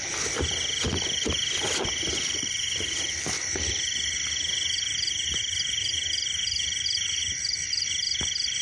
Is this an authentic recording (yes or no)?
yes